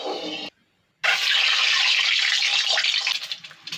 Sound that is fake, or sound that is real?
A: real